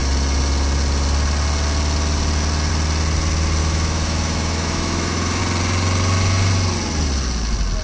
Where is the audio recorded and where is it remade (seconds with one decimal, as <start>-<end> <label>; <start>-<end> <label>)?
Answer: 0.0-3.6 recorded; 3.6-5.4 remade; 5.4-7.8 recorded